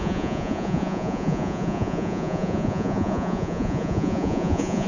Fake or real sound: fake